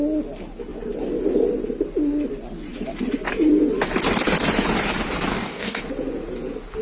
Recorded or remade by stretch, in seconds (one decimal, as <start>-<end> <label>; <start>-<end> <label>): 0.0-5.3 recorded; 5.3-5.8 remade; 5.8-6.8 recorded